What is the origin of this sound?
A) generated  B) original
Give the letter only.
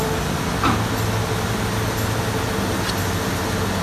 B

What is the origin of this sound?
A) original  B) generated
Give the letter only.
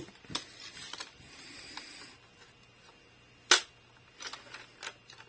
A